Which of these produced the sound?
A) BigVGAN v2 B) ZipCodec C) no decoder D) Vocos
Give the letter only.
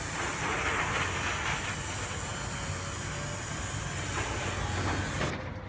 C